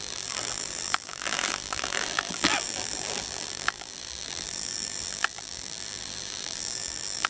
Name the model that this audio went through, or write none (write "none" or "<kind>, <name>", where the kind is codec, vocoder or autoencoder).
vocoder, BigVGAN v2